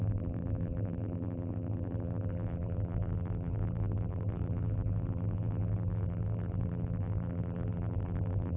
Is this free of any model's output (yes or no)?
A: no